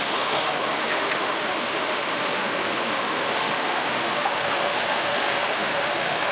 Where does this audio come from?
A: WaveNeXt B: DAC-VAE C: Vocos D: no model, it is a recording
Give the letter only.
B